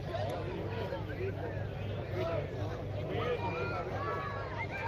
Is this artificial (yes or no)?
no